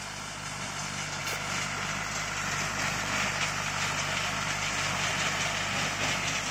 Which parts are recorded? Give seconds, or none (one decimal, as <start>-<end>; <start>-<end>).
0.0-6.5